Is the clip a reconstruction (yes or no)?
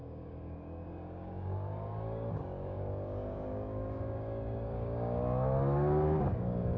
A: yes